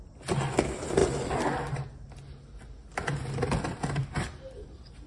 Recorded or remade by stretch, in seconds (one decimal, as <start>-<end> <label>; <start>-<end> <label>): 0.0-5.1 recorded